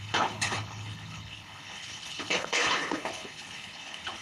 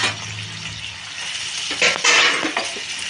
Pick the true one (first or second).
second